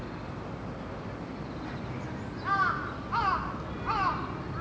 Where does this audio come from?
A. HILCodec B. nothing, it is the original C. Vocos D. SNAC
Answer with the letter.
B